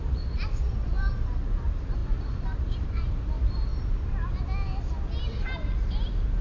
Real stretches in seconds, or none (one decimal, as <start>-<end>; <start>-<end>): 3.7-5.2